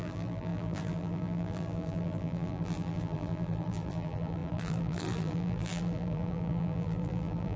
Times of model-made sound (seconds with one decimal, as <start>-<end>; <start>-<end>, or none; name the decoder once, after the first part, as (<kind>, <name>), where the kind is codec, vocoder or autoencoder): 0.0-7.6 (vocoder, BigVGAN v2)